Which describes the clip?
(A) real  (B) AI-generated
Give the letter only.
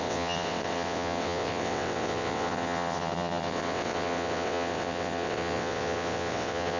B